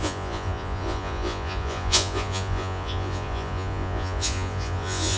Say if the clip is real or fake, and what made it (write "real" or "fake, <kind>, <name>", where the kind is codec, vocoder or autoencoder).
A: fake, vocoder, Vocos